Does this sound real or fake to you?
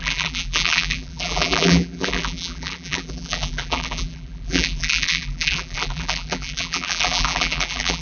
fake